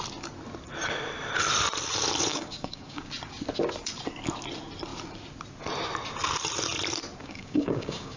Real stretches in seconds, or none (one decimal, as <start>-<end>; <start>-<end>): 0.0-2.3; 3.1-7.2